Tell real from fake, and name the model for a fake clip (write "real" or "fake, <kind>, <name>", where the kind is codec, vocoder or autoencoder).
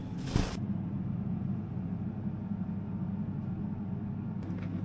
real